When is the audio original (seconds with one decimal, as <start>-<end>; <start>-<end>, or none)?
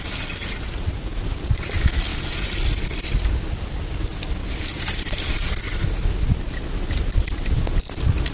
0.0-1.1; 1.6-8.3